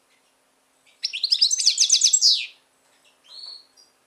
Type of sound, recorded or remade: recorded